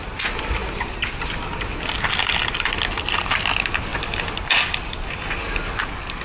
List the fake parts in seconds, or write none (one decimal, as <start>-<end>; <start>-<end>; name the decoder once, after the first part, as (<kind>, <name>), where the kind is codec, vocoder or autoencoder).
2.2-2.7 (vocoder, BigVGAN v2)